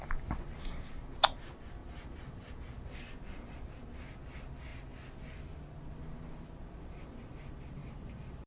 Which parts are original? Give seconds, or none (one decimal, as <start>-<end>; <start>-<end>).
0.0-1.8; 2.5-7.8